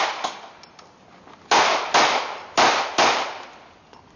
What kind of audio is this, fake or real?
real